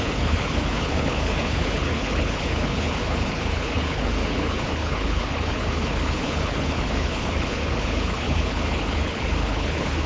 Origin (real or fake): fake